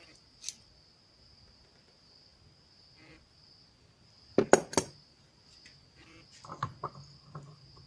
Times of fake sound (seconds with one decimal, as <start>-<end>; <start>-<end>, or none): none